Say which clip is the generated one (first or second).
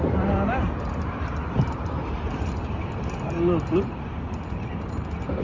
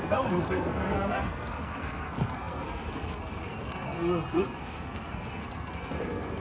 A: second